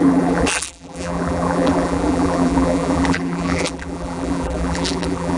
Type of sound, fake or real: fake